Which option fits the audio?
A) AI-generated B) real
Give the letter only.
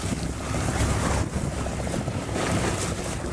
B